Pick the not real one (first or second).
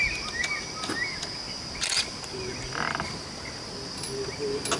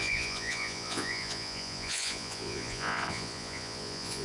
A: second